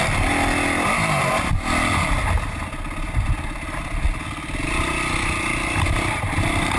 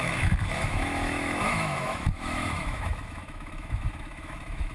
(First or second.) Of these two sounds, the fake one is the second